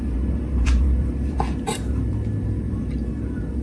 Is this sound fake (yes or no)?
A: yes